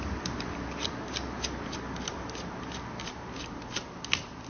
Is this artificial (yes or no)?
no